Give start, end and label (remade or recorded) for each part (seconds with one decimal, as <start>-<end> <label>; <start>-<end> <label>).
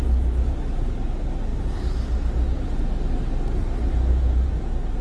0.0-5.0 recorded